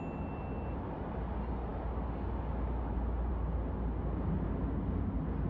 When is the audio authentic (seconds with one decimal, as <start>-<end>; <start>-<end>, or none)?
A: 0.0-5.5